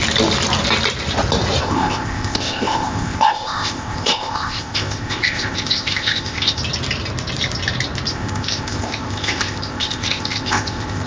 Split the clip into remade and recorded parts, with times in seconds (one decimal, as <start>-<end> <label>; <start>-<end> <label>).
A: 0.0-1.6 recorded; 1.6-6.6 remade; 6.6-8.1 recorded; 8.1-11.1 remade